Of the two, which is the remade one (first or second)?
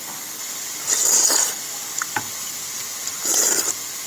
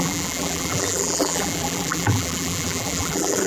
second